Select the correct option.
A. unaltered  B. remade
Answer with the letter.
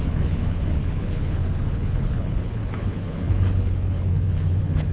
B